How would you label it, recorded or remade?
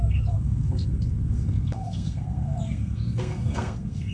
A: remade